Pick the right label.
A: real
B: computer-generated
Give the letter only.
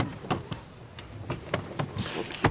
A